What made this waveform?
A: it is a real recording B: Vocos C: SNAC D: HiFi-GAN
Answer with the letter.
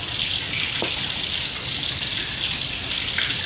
A